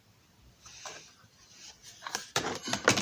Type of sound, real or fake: real